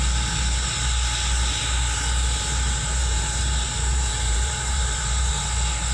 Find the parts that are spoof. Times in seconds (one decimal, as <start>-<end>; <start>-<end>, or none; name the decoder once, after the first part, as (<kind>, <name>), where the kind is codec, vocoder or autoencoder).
3.0-5.3 (vocoder, BigVGAN v2)